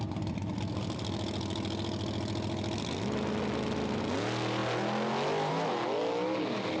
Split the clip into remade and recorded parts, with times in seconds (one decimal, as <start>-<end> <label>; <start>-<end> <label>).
0.0-6.8 recorded